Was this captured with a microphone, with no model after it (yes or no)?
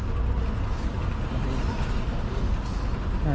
yes